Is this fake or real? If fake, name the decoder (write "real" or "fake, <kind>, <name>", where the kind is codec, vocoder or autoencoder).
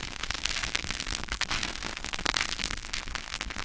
fake, codec, SNAC